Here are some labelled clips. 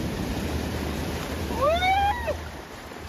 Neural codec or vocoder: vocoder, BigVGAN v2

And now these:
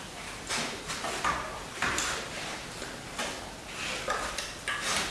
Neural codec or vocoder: none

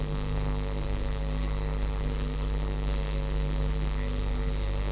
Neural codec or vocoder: codec, SNAC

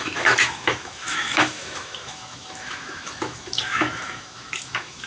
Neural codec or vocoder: autoencoder, DAC-VAE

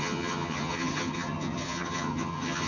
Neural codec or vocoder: vocoder, HiFi-GAN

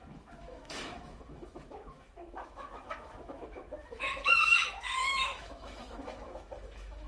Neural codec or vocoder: autoencoder, DAC-VAE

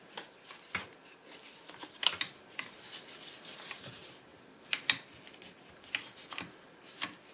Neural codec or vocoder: none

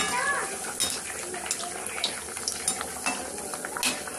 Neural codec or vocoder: none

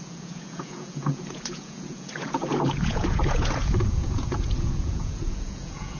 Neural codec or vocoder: vocoder, Vocos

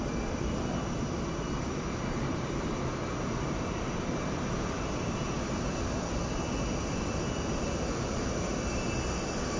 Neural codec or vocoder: none